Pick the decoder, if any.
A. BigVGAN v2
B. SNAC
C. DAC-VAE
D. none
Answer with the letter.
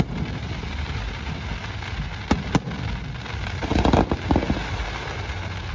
D